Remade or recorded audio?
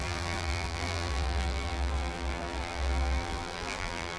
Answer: remade